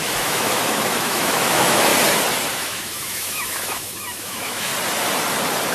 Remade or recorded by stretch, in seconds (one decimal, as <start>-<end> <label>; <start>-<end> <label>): 0.0-1.9 remade; 1.9-2.5 recorded; 2.5-4.7 remade; 4.7-5.7 recorded